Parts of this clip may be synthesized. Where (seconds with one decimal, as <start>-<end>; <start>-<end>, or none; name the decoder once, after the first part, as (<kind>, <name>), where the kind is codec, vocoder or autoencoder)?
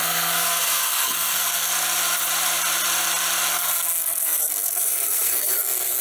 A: 0.0-1.7 (codec, SNAC); 3.5-6.0